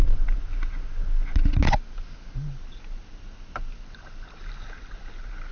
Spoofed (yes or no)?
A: no